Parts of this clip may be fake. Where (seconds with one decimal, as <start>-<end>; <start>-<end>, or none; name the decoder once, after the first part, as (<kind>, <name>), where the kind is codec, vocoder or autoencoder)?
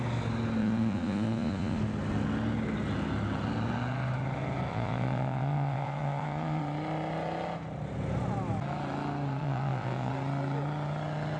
0.6-1.8 (vocoder, Vocos); 4.7-6.6; 9.4-10.1